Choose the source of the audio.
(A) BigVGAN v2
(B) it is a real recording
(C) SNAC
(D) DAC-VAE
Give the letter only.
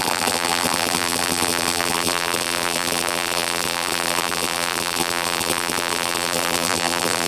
A